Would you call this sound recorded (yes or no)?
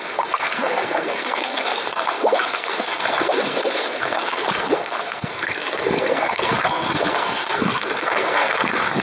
no